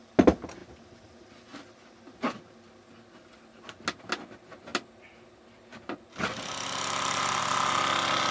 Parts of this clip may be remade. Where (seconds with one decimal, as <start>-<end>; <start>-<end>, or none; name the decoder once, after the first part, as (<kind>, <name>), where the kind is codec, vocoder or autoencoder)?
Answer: none